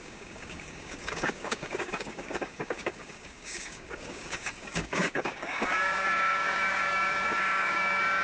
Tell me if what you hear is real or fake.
fake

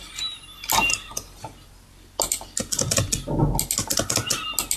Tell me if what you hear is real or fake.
real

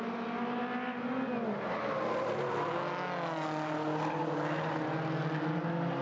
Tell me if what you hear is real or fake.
real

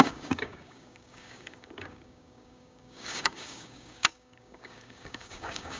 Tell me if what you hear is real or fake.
fake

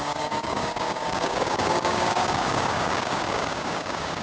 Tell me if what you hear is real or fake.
fake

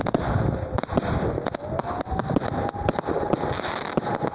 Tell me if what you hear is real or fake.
real